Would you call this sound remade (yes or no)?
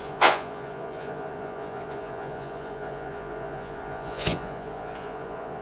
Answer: yes